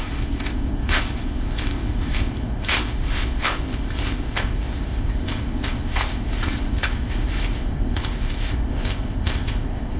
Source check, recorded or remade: remade